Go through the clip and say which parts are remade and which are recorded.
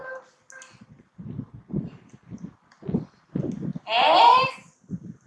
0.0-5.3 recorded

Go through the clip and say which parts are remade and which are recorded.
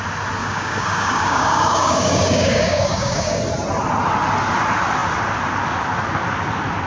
0.0-0.4 recorded; 0.4-3.4 remade; 3.4-6.9 recorded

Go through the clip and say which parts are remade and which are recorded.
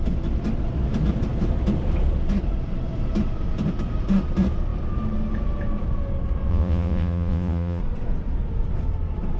0.0-6.5 recorded; 6.5-7.8 remade; 7.8-9.4 recorded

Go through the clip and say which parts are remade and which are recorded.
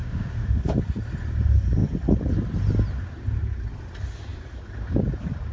0.0-0.6 remade; 0.6-5.5 recorded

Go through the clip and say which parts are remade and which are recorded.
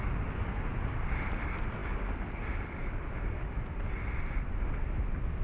0.0-5.4 recorded